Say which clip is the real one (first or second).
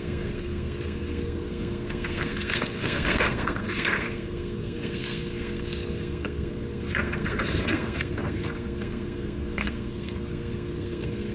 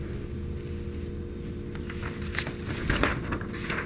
second